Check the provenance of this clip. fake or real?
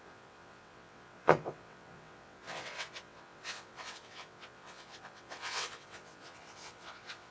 fake